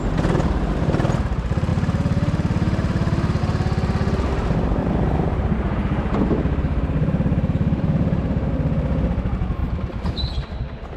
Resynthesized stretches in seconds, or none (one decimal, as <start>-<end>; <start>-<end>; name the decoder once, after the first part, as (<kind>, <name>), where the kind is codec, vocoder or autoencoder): 1.7-3.4 (vocoder, BigVGAN v2); 4.8-8.5; 9.6-10.3